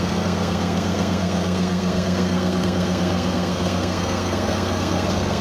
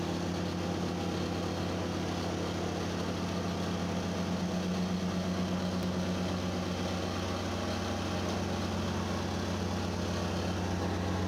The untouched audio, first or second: second